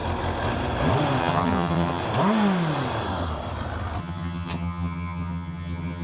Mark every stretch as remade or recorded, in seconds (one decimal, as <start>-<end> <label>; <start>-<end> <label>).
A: 0.0-1.2 recorded; 1.2-2.0 remade; 2.0-4.0 recorded; 4.0-6.0 remade